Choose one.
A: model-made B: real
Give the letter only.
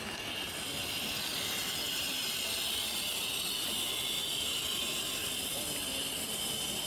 B